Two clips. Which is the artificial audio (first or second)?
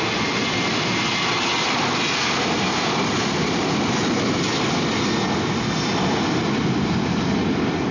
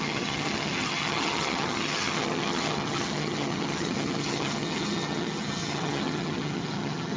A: second